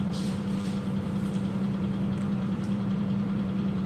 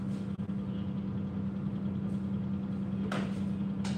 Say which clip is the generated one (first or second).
first